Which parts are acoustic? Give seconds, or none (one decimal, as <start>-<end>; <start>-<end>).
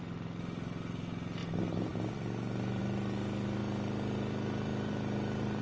0.0-5.6